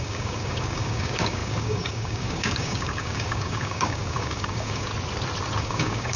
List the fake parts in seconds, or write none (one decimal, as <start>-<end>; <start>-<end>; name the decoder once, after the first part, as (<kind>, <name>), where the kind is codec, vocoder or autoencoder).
0.0-4.9 (codec, DAC); 5.6-6.2